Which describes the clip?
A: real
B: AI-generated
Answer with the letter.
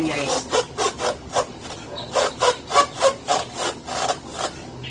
A